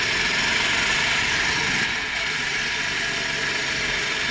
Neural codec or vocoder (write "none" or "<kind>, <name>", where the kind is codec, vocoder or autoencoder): none